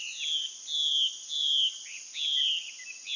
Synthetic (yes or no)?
no